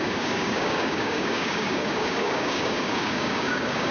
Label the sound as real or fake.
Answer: fake